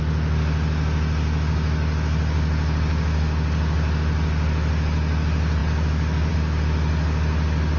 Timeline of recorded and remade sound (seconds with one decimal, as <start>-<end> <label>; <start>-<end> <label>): 0.0-7.8 recorded